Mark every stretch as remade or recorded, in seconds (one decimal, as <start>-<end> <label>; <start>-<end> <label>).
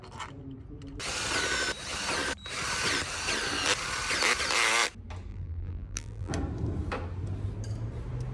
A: 0.0-5.3 recorded; 5.3-6.3 remade; 6.3-8.3 recorded